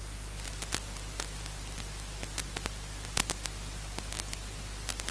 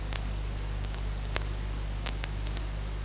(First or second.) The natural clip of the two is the first